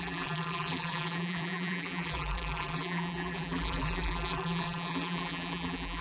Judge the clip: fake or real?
fake